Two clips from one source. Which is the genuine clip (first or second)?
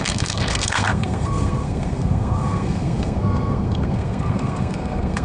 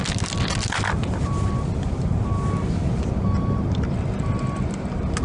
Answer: second